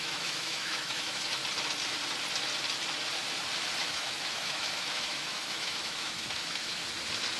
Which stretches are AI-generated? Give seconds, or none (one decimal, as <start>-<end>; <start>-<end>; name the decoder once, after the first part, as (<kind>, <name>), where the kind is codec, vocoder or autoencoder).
0.0-1.4 (autoencoder, DAC-VAE); 3.8-6.8